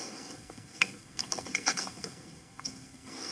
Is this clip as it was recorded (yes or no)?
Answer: no